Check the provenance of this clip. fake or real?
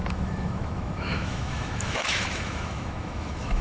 fake